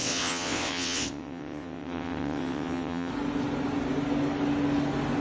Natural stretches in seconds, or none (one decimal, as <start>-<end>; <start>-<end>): 3.1-5.2